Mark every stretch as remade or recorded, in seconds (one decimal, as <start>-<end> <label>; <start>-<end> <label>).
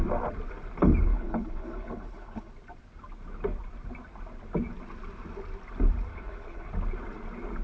0.0-1.1 recorded; 1.1-2.5 remade; 2.5-6.1 recorded; 6.1-6.7 remade; 6.7-7.6 recorded